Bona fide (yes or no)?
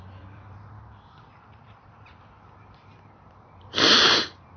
no